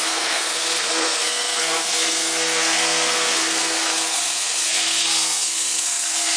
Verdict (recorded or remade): remade